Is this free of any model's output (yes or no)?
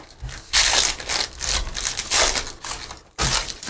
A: yes